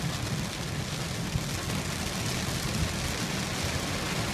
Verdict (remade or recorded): recorded